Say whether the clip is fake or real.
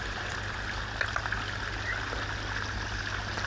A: real